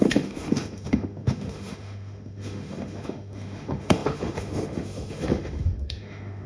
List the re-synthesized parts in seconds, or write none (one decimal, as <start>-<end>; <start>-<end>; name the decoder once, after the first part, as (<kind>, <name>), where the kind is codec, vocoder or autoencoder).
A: 0.0-6.5 (autoencoder, DAC-VAE)